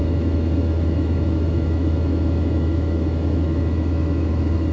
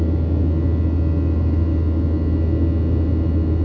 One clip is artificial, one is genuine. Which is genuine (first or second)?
second